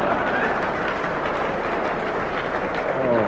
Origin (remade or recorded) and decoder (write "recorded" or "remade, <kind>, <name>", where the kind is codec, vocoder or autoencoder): recorded